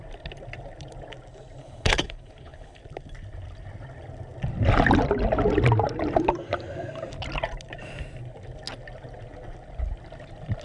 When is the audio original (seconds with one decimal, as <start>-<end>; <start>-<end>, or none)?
0.0-1.6; 2.8-10.6